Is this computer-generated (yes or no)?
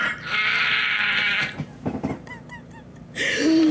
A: yes